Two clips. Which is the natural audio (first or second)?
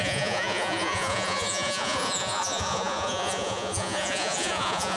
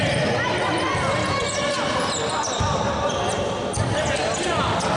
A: second